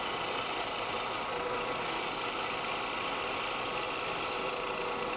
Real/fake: real